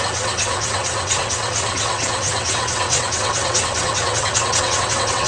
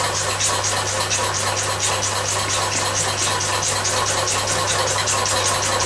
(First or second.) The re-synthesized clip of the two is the first